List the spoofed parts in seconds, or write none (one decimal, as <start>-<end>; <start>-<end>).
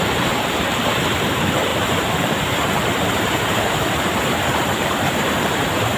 0.0-6.0